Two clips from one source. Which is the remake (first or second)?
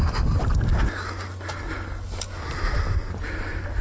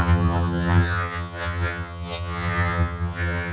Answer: second